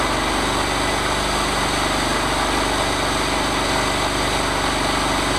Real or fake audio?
real